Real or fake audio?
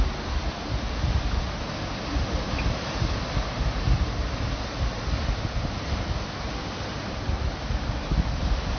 real